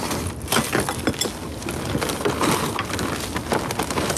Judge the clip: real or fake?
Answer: real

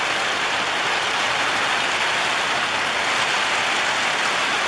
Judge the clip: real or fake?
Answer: real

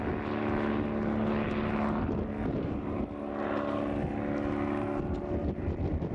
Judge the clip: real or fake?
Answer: real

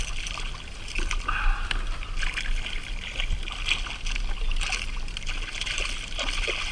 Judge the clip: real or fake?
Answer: real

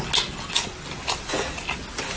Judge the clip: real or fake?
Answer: real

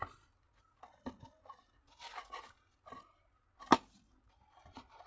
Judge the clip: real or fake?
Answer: real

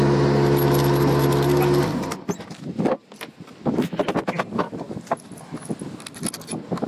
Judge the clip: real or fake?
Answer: real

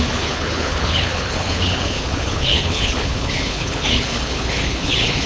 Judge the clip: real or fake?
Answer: fake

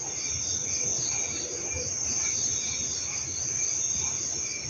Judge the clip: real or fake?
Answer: real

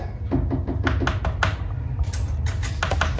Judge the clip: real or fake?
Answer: real